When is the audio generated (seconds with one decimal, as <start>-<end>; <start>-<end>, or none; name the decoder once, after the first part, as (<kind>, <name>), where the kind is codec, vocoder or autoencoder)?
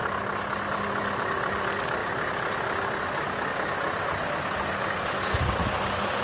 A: none